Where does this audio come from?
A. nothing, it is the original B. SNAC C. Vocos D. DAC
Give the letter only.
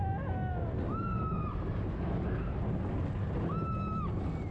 A